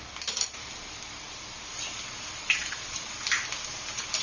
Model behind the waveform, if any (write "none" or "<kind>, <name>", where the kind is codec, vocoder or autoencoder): none